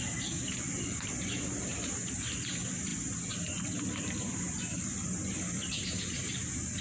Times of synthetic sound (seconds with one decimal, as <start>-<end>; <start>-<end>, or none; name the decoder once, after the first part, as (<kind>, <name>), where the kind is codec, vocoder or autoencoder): none